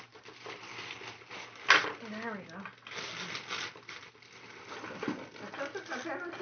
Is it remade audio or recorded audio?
recorded